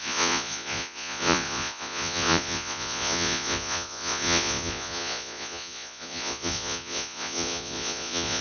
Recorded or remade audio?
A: remade